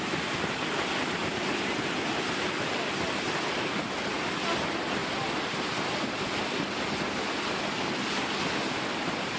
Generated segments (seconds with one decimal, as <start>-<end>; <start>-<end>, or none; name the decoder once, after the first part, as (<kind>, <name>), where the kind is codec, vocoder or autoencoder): none